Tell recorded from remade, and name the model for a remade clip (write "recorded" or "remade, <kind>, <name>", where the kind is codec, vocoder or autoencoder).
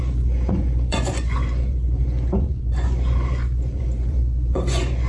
remade, vocoder, Vocos